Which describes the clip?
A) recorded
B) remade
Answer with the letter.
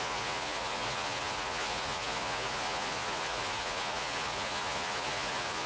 B